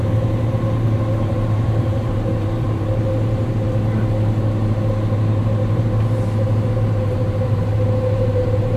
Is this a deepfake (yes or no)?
yes